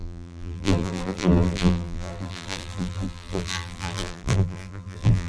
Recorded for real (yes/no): no